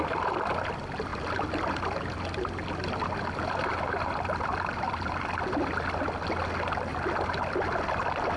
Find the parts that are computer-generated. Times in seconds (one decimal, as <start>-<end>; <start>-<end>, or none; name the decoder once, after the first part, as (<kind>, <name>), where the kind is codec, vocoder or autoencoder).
3.7-5.1 (vocoder, BigVGAN v2); 6.9-7.9